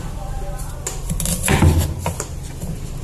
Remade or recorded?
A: recorded